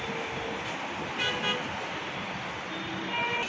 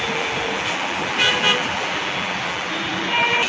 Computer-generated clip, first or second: second